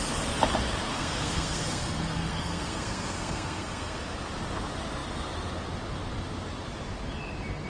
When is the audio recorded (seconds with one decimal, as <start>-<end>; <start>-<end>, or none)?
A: 0.0-0.9; 4.0-7.7